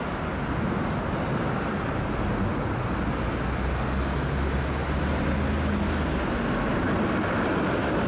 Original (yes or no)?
yes